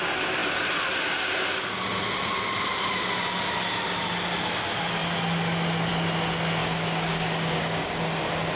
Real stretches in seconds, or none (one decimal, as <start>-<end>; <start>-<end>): 0.0-6.6; 8.0-8.6